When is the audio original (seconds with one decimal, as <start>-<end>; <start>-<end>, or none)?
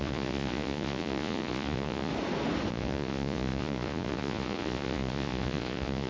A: 2.1-2.7